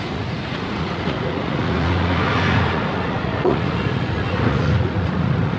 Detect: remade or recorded remade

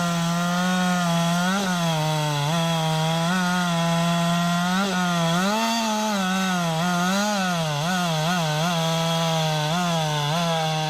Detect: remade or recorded recorded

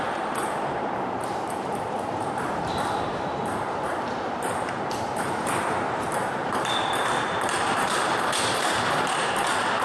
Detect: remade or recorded remade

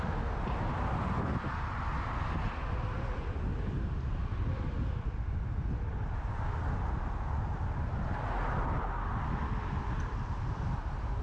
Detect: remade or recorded recorded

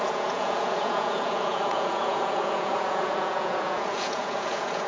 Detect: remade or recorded remade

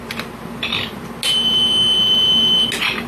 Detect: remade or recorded recorded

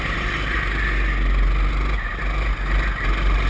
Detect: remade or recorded recorded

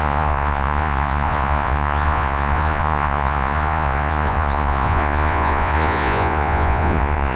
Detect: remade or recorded remade